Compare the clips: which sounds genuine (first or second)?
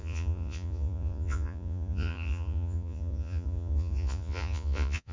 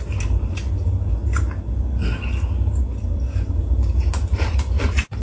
second